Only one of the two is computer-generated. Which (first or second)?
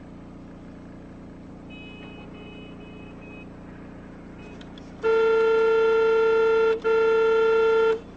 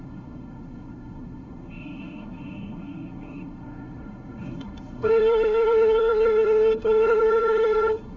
second